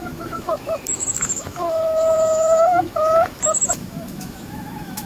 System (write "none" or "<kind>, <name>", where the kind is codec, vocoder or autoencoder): autoencoder, DAC-VAE